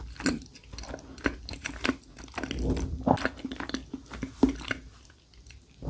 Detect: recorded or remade recorded